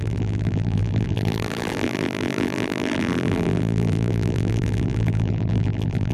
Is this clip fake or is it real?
fake